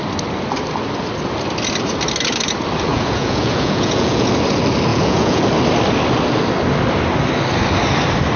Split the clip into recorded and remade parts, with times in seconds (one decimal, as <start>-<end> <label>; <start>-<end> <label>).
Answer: 0.0-2.9 recorded; 2.9-4.3 remade; 4.3-4.9 recorded; 4.9-5.4 remade; 5.4-8.4 recorded

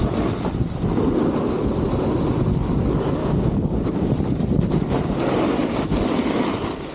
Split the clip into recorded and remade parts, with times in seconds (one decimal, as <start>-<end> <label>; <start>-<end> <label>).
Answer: 0.0-3.2 recorded; 3.2-4.1 remade; 4.1-6.9 recorded

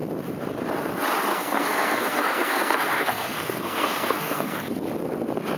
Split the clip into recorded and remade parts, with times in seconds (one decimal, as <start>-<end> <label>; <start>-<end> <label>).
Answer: 0.0-1.3 recorded; 1.3-4.7 remade; 4.7-5.6 recorded

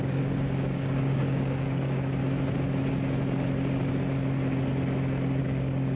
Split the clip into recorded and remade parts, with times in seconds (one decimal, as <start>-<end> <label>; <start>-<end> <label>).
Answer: 0.0-2.2 remade; 2.2-5.4 recorded; 5.4-6.0 remade

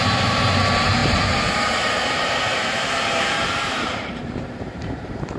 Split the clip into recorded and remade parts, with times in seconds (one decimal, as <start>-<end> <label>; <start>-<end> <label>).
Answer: 0.0-5.4 remade

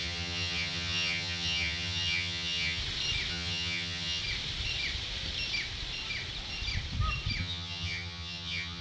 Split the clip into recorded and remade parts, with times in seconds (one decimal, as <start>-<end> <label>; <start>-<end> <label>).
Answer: 0.0-2.8 remade; 2.8-3.3 recorded; 3.3-4.2 remade; 4.2-7.4 recorded; 7.4-8.8 remade

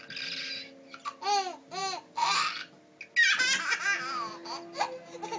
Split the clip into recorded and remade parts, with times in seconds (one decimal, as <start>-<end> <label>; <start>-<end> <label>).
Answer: 0.0-5.4 recorded

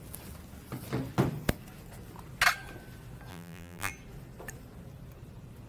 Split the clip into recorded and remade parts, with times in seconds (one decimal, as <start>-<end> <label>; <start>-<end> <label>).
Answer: 0.0-3.3 recorded; 3.3-3.9 remade; 3.9-5.7 recorded